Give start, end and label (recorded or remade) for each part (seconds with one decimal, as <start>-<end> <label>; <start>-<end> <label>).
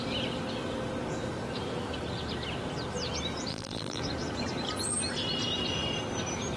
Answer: 0.0-3.5 recorded; 3.5-4.0 remade; 4.0-6.6 recorded